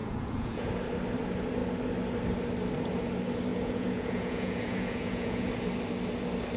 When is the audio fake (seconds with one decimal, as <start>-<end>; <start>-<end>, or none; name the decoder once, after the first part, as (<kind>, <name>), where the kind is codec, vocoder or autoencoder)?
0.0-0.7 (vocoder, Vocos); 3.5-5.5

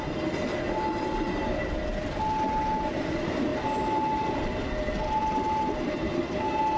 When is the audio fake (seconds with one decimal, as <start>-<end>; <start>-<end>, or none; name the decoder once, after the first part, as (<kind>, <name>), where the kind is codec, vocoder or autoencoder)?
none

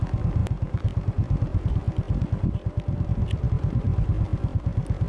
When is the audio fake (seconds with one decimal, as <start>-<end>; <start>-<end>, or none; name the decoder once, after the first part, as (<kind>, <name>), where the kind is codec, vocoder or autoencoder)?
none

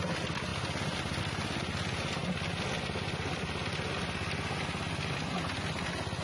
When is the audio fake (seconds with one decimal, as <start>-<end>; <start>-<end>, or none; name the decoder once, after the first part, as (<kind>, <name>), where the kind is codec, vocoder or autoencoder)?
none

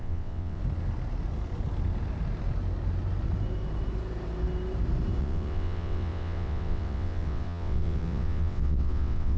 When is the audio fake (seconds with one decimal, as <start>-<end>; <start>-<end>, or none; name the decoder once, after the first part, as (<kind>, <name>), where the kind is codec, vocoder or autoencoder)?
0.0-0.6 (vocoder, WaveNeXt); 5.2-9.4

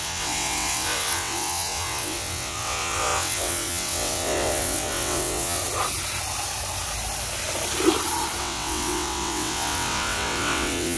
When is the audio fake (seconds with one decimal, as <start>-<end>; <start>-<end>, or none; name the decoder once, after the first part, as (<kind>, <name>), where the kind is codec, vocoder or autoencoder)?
0.0-5.6 (vocoder, WaveNeXt); 8.4-11.0